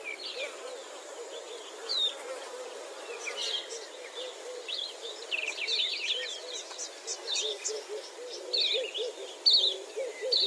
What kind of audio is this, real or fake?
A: real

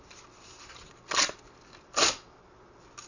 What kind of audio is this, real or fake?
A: real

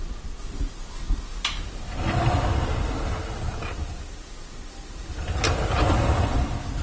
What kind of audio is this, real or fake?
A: real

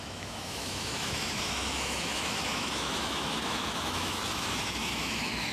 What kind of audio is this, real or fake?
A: fake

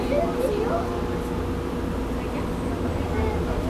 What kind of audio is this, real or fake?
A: real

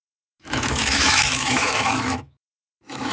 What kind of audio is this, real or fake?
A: fake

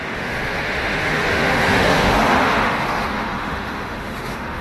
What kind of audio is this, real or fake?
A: fake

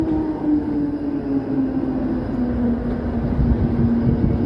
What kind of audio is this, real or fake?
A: real